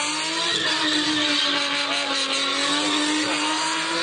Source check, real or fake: real